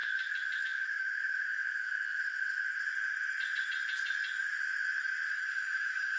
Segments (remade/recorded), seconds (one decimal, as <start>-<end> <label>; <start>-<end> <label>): 0.0-0.6 recorded; 0.6-1.6 remade; 1.6-5.3 recorded; 5.3-6.2 remade